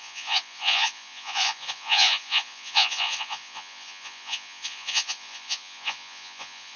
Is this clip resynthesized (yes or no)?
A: yes